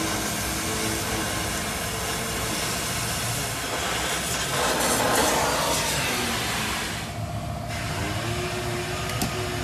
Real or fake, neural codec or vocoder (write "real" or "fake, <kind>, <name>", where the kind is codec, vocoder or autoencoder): real